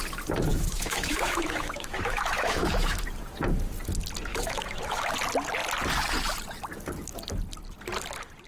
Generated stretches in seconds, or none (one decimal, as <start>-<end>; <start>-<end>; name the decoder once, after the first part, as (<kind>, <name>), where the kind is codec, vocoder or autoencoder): 0.5-3.0 (autoencoder, DAC-VAE); 4.3-5.1